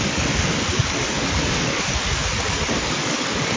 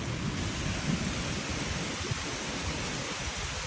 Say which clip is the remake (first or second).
first